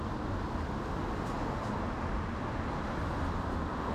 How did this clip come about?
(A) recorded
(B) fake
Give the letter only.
A